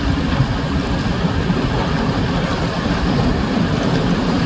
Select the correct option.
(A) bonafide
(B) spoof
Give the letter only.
B